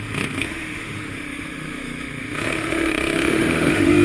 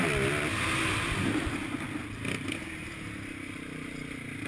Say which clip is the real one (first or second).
second